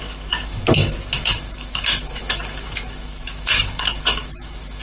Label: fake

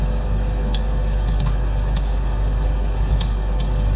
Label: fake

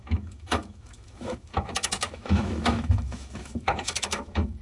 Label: fake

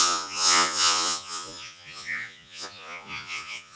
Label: fake